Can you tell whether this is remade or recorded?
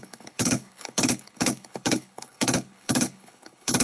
remade